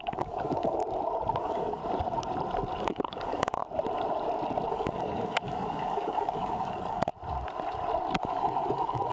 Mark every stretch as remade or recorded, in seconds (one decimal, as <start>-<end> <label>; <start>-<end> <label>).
0.0-0.8 remade; 0.8-1.4 recorded; 1.4-1.8 remade; 1.8-2.8 recorded; 2.8-3.6 remade; 3.6-4.7 recorded; 4.7-7.1 remade; 7.1-8.2 recorded; 8.2-9.1 remade